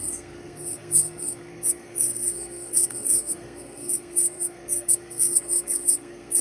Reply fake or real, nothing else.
fake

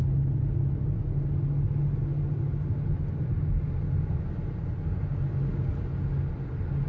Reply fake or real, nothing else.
real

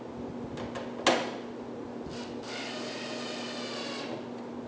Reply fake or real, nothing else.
real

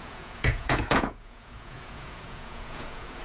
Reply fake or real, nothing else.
fake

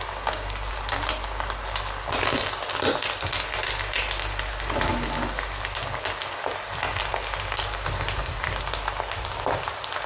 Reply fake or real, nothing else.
real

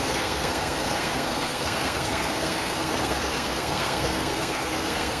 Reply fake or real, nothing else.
fake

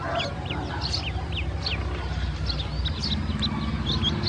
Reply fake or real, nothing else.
real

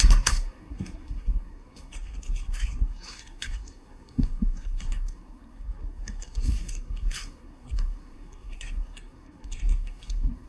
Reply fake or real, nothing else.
fake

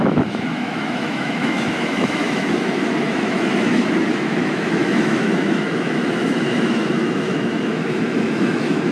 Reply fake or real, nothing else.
fake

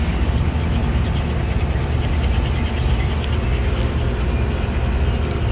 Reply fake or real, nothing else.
real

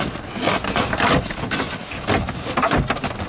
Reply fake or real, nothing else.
real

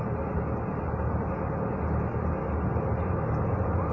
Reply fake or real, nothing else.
real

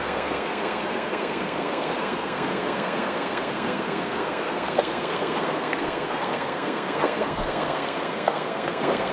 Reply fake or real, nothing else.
fake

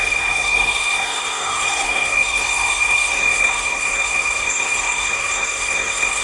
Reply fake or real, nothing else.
fake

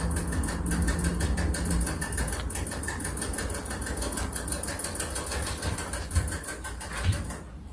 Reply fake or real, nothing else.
real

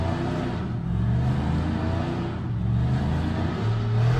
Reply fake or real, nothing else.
real